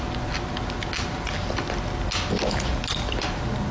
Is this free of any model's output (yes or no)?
yes